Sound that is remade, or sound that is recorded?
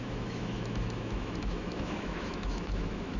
remade